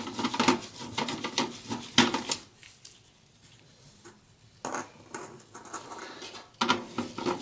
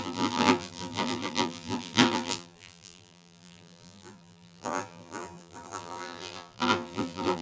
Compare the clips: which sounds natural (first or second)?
first